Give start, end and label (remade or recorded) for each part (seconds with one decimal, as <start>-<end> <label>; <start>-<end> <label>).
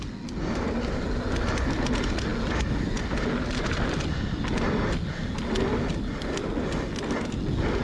0.0-7.8 recorded